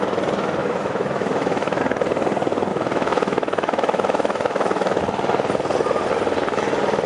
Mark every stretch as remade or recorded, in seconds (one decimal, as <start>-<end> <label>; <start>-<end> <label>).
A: 0.0-0.6 recorded; 0.6-1.8 remade; 1.8-2.7 recorded; 2.7-5.0 remade; 5.0-7.1 recorded